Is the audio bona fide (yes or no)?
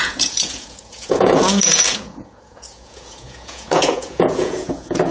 no